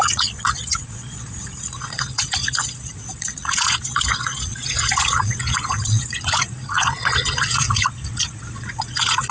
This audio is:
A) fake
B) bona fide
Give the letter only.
A